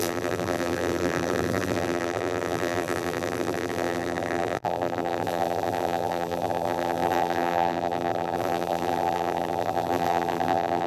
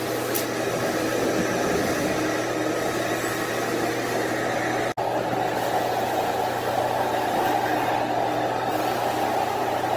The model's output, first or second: first